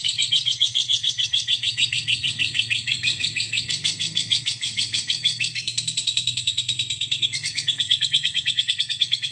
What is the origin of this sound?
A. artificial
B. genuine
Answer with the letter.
A